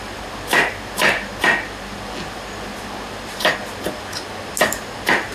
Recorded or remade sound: recorded